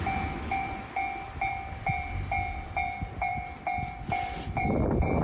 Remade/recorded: remade